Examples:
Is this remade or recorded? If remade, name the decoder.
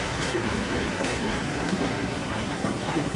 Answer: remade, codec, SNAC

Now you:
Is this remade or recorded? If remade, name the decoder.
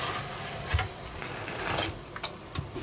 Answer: recorded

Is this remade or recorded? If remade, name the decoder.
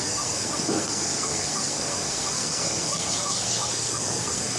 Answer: remade, codec, SNAC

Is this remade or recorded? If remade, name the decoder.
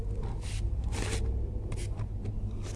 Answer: recorded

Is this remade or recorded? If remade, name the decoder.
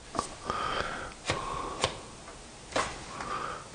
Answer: recorded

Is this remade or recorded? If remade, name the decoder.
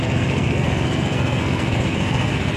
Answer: remade, codec, SNAC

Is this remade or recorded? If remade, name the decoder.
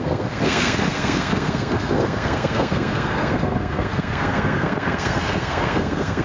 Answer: remade, codec, SNAC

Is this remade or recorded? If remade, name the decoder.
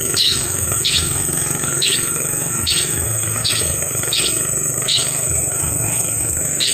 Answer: remade, codec, SNAC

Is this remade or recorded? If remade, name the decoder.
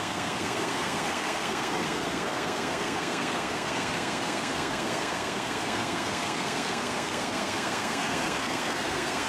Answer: remade, codec, SNAC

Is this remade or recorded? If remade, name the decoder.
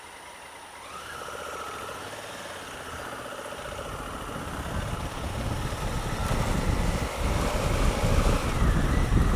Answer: recorded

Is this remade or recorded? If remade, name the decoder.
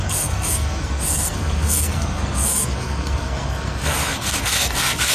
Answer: remade, codec, SNAC